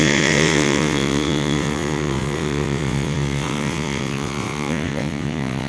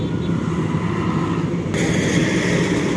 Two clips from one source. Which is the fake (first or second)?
first